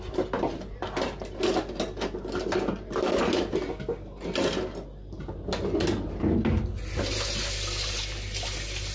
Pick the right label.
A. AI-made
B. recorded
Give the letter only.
B